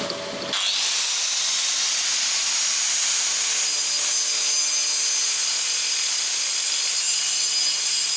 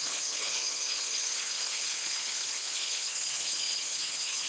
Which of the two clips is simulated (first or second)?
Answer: second